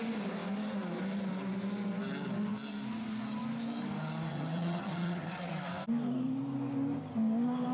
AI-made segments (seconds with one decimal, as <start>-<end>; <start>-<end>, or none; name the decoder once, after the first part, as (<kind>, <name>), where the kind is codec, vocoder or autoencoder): 4.3-5.5 (vocoder, HiFi-GAN)